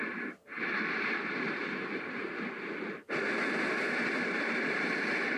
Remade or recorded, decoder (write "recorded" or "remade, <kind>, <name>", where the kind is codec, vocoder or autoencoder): recorded